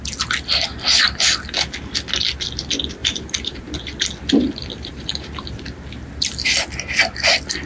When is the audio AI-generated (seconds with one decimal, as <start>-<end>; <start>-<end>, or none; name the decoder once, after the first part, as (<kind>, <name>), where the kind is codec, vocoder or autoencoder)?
3.0-3.6 (vocoder, BigVGAN v2); 4.6-5.4